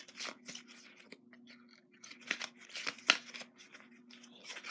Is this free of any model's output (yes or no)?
yes